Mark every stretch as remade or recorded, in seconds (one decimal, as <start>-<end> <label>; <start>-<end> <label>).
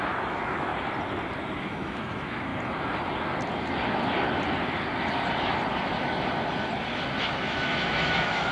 0.0-0.7 remade; 0.7-1.6 recorded; 1.6-2.5 remade; 2.5-7.2 recorded; 7.2-8.5 remade